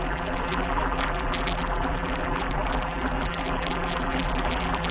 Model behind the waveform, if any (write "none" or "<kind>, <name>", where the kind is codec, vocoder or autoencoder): vocoder, BigVGAN v2